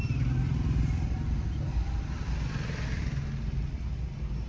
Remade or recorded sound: recorded